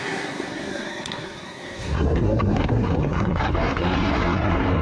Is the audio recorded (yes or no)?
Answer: no